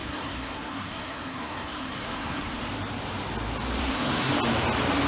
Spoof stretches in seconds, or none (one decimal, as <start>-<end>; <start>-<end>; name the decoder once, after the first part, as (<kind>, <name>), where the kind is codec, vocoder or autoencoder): 0.0-2.6 (codec, SNAC); 3.8-4.3